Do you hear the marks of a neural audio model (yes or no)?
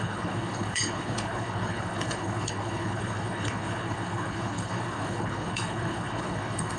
yes